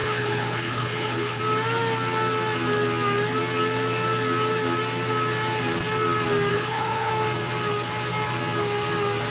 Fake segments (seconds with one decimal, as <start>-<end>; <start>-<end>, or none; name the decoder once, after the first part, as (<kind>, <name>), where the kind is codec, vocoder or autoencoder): 0.0-1.4 (codec, HILCodec); 6.5-7.1